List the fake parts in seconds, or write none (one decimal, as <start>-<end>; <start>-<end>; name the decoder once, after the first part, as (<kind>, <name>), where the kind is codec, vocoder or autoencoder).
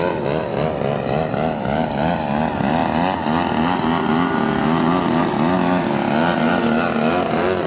none